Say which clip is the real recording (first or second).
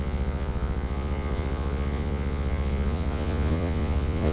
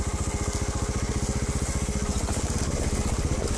second